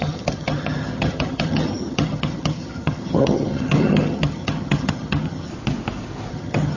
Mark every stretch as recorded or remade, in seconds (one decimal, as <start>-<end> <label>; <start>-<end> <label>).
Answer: 0.0-5.5 remade; 5.5-6.3 recorded; 6.3-6.8 remade